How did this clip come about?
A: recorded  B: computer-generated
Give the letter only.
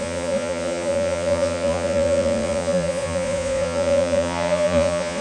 B